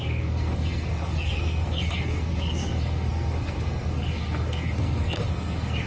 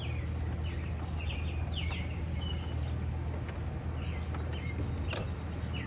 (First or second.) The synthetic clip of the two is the first